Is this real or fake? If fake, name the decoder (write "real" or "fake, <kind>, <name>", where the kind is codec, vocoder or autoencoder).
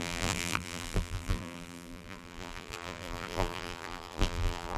fake, vocoder, BigVGAN v2